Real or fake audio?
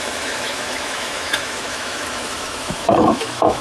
fake